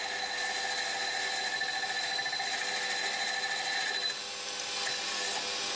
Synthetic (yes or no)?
no